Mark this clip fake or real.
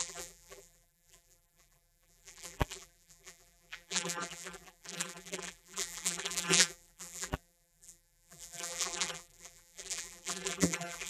fake